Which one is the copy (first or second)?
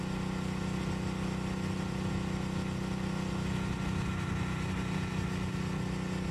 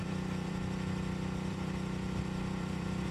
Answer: second